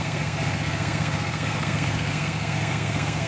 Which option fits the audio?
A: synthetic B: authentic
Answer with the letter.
A